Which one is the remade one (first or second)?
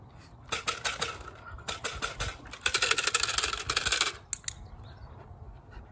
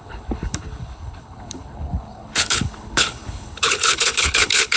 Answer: second